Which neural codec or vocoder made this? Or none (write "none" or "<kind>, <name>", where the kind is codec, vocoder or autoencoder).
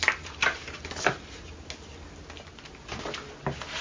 none